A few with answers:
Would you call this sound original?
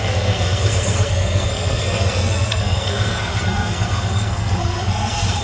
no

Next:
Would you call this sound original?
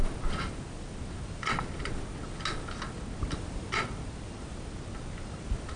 yes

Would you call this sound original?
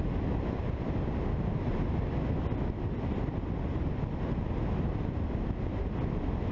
yes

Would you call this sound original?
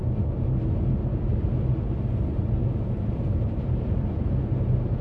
yes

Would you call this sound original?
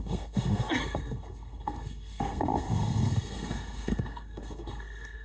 no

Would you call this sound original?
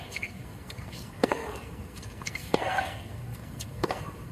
no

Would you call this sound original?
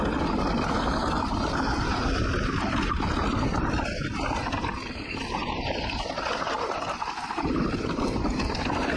yes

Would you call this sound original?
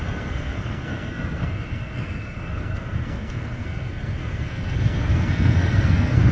no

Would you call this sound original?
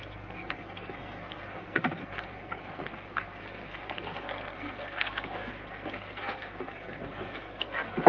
no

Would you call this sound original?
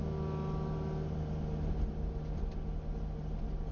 yes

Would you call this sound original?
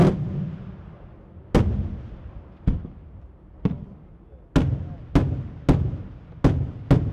yes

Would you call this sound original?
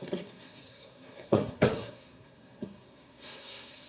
no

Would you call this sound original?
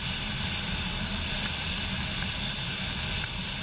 yes